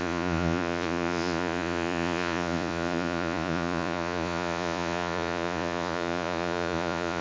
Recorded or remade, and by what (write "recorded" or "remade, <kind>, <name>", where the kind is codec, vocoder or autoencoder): remade, vocoder, Vocos